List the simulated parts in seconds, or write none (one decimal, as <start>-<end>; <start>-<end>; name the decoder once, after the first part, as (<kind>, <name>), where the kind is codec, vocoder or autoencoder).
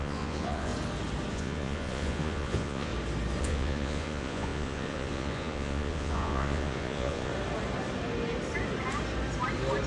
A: 0.0-0.7 (vocoder, Vocos); 1.3-2.9; 3.4-7.3